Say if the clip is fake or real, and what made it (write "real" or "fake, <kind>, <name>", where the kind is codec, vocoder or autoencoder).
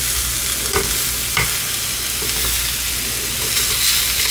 real